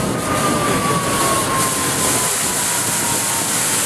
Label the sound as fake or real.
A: real